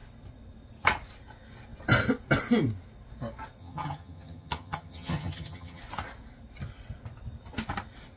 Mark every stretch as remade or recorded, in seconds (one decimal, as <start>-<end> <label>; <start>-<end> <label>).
0.0-3.6 recorded; 3.6-5.8 remade; 5.8-8.2 recorded